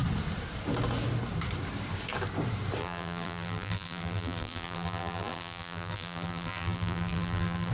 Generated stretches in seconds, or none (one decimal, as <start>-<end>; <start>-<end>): 2.8-7.7

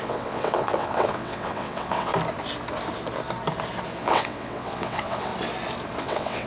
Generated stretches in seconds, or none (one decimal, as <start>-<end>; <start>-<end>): 0.0-2.1; 4.0-5.3; 6.0-6.5

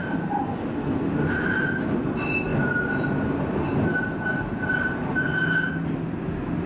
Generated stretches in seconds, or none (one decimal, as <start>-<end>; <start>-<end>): none

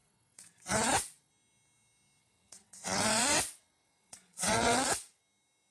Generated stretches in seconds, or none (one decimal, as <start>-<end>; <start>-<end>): 0.0-1.3; 2.2-5.2

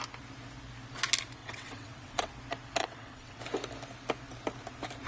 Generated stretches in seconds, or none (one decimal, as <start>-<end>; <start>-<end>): 1.4-2.3; 2.8-3.4

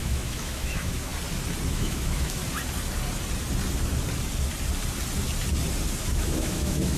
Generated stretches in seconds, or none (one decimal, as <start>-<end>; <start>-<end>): 0.0-1.1; 1.7-2.4; 6.0-7.0

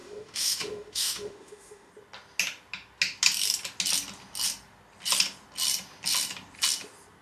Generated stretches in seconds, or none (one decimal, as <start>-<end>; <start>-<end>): 0.0-1.9

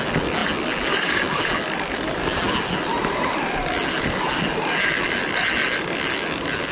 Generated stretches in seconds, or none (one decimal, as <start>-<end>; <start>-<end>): none